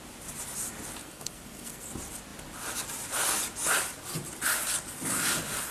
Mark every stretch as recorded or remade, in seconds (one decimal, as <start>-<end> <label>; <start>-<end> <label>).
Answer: 0.0-1.0 recorded; 1.0-1.9 remade; 1.9-5.7 recorded